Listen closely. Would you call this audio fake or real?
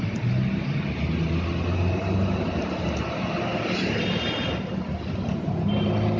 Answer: real